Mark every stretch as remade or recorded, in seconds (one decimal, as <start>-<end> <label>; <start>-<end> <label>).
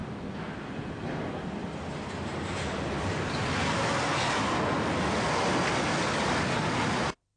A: 0.0-7.4 recorded